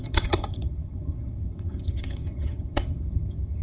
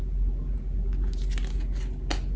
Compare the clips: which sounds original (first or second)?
second